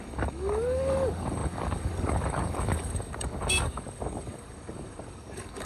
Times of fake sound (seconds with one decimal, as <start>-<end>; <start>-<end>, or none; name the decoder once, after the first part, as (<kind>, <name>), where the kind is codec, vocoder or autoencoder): 0.0-5.7 (codec, DAC)